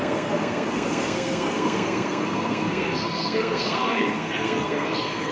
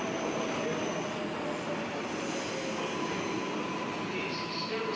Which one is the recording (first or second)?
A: second